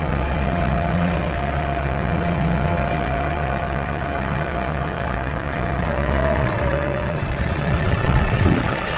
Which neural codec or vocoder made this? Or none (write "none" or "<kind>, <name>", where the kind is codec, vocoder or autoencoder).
vocoder, WaveNeXt